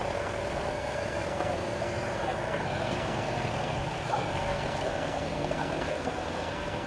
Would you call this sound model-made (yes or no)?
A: yes